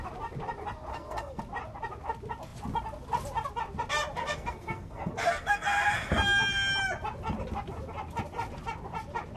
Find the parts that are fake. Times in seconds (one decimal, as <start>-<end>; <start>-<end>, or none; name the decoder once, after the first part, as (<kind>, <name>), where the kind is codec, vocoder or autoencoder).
0.9-1.4 (codec, SNAC); 4.2-6.1